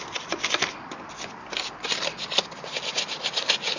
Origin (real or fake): real